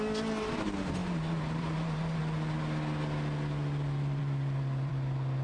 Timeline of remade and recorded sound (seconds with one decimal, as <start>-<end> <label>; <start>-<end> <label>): 0.0-1.0 recorded; 1.0-2.2 remade; 2.2-4.2 recorded; 4.2-4.9 remade; 4.9-5.4 recorded